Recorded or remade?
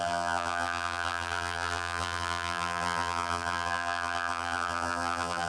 remade